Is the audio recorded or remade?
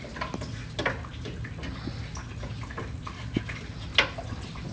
recorded